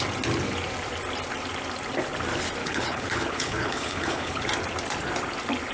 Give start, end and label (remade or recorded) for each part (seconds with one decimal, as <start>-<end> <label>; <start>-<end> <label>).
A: 0.0-2.6 recorded; 2.6-4.4 remade; 4.4-5.7 recorded

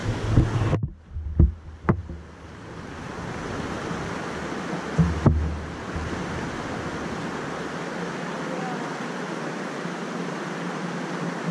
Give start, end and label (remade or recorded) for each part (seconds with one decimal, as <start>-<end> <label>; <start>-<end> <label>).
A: 0.0-11.5 recorded